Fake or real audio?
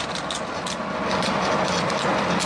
real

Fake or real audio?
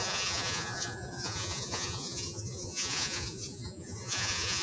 fake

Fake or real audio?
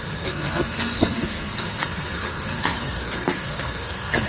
fake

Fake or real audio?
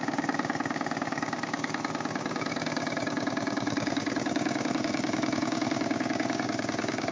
fake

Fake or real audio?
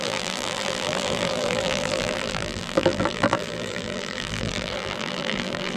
fake